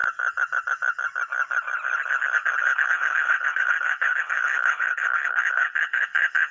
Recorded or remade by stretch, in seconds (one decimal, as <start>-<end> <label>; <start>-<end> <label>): 0.0-2.6 recorded; 2.6-6.5 remade